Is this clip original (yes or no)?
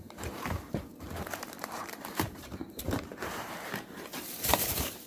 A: no